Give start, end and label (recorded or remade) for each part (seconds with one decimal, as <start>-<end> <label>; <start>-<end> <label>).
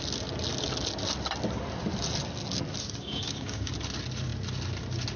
0.0-3.0 recorded; 3.0-3.7 remade; 3.7-5.2 recorded